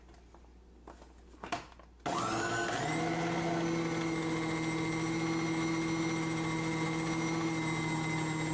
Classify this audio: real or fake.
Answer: real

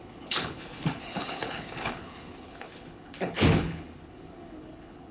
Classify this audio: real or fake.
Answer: fake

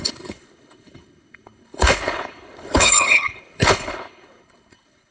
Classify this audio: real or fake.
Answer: fake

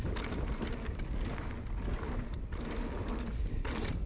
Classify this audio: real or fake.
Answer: real